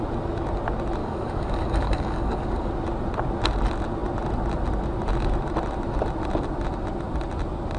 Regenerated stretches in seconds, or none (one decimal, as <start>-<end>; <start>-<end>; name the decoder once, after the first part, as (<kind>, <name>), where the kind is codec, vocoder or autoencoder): 1.0-2.7 (codec, DAC)